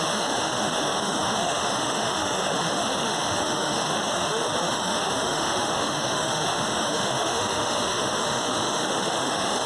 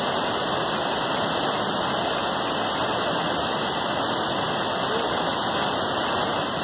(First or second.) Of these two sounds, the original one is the second